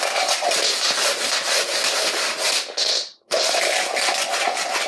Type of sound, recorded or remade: recorded